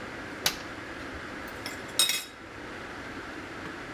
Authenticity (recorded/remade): recorded